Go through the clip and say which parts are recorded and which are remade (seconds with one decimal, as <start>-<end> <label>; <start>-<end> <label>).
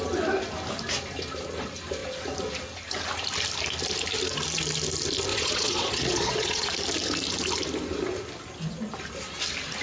0.0-5.3 recorded; 5.3-6.7 remade; 6.7-9.8 recorded